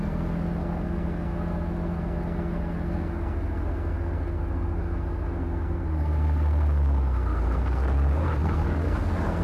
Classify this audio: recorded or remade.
remade